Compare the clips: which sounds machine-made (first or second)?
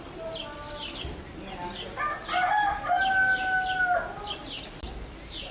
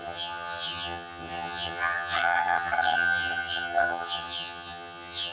second